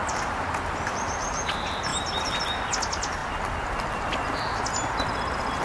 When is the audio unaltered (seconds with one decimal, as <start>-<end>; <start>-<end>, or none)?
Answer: 1.5-1.9; 2.4-5.6

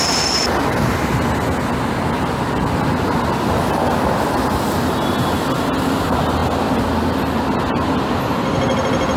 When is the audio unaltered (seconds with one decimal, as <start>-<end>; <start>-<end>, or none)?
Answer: 0.0-9.2

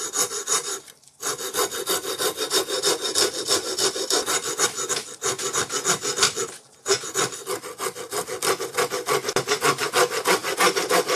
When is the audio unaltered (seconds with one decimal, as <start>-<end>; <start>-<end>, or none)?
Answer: 0.0-11.2

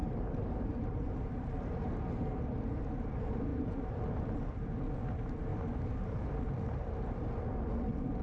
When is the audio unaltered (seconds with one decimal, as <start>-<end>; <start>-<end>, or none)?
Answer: 1.9-3.5; 4.0-5.5; 6.2-8.2

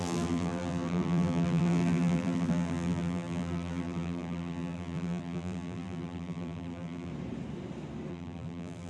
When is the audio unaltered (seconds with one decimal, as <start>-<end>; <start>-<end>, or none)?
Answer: 7.1-8.1

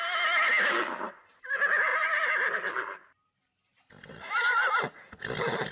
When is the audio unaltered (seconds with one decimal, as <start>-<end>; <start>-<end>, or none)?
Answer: 0.0-1.9; 3.8-5.7

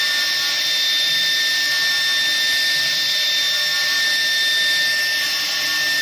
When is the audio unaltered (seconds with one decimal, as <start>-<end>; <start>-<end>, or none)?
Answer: 0.0-6.0

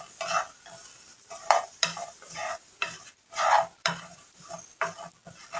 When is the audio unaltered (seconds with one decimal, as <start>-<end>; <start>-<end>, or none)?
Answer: 0.0-1.1; 4.5-5.6